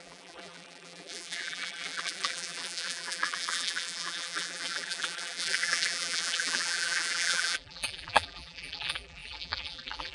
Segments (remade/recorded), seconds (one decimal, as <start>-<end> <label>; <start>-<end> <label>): 0.0-10.1 remade